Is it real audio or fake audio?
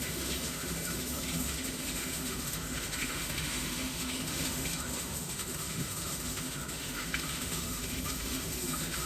fake